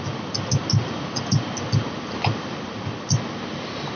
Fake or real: real